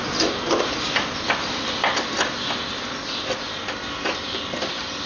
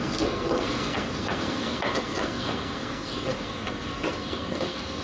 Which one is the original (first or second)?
first